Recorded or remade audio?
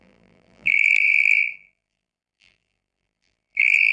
remade